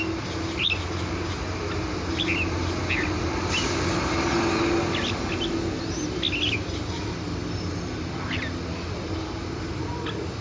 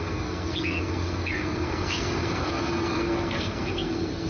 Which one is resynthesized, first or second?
second